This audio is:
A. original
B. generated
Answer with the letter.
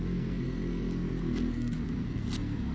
B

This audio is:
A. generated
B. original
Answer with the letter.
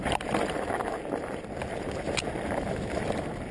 B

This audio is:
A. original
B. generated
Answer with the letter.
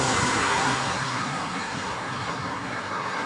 B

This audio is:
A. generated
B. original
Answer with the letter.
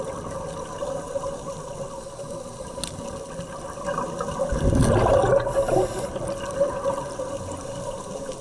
B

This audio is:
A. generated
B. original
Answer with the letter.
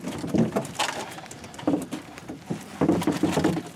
B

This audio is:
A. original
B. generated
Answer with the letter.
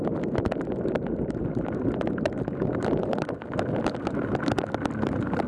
A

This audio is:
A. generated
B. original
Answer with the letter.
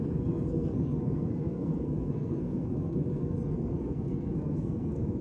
A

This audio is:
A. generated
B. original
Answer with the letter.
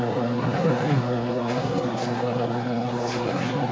A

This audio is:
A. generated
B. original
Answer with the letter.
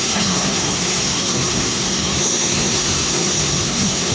A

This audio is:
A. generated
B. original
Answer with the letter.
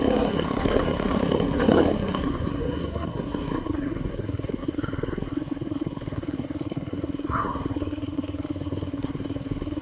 A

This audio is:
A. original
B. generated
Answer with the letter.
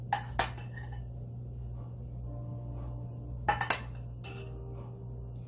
A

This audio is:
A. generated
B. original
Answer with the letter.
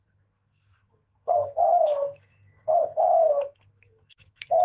A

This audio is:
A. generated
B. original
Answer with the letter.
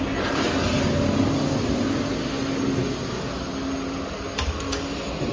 B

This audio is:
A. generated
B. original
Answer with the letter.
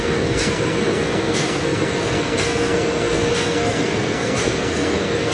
A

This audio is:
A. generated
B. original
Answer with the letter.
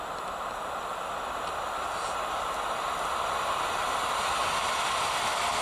B